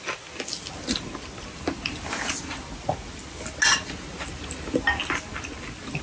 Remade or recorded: recorded